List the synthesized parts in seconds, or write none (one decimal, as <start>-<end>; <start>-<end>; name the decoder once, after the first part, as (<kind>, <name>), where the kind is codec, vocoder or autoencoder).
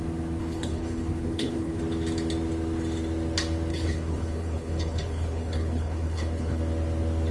0.4-1.8 (codec, HILCodec); 3.7-6.6